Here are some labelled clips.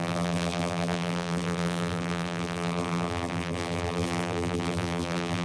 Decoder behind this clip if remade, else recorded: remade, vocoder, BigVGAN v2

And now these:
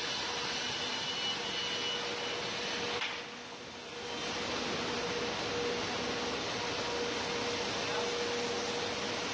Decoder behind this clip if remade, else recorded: recorded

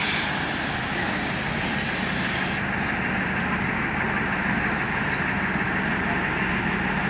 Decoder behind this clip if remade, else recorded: recorded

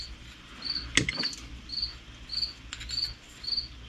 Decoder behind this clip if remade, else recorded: recorded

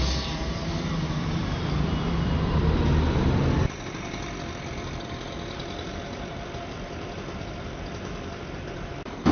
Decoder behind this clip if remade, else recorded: remade, vocoder, BigVGAN v2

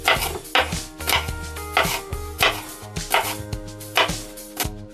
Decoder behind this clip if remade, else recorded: recorded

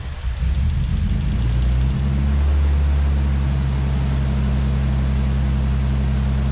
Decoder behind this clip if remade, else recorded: recorded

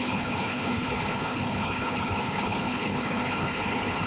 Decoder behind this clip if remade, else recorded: remade, codec, HILCodec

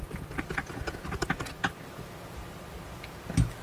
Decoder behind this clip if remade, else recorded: recorded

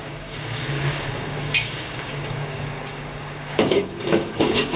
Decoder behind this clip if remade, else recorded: remade, codec, DAC